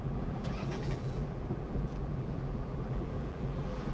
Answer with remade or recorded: remade